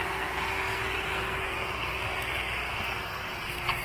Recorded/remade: remade